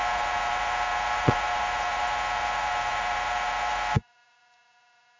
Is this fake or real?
fake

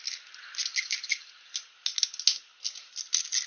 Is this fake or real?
real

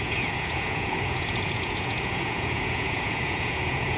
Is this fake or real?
fake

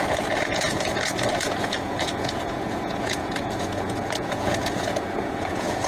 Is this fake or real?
fake